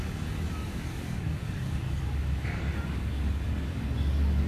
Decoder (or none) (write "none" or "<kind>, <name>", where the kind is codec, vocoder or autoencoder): codec, DAC